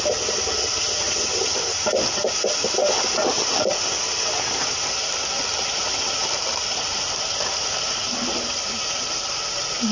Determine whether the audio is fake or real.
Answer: real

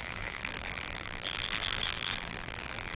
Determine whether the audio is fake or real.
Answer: fake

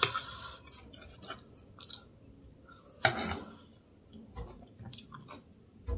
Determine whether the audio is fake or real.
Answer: real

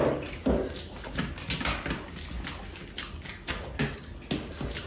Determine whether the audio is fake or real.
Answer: real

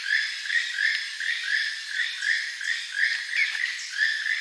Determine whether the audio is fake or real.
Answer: fake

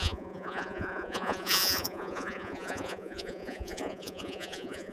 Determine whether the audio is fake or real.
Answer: fake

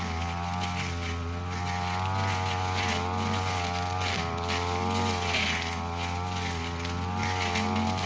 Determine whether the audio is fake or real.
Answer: real